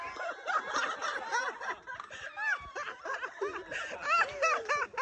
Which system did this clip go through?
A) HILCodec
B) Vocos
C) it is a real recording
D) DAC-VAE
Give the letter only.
C